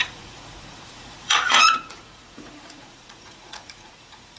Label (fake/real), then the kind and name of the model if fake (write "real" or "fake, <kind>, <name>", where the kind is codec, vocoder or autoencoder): fake, vocoder, Vocos